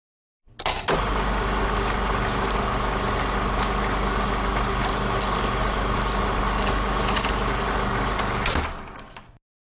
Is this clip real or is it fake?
real